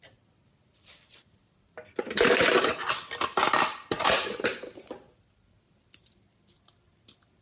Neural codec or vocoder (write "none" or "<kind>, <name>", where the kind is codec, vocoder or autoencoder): vocoder, BigVGAN v2